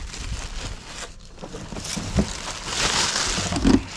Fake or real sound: real